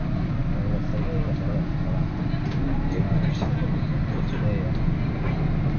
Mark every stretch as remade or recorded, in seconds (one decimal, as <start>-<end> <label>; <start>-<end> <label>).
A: 0.0-5.8 recorded